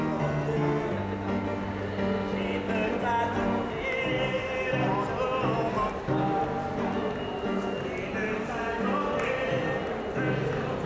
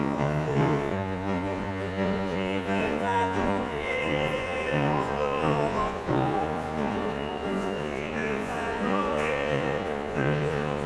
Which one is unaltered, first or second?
first